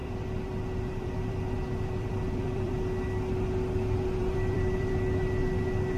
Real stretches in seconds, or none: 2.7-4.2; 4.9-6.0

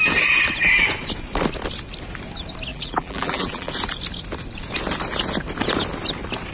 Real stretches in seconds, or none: 0.0-2.7; 3.7-6.5